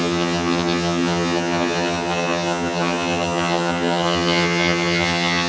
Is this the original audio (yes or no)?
no